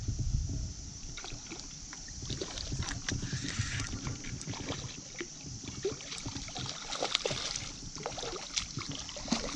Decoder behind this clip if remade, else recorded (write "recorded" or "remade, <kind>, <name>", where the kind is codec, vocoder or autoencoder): recorded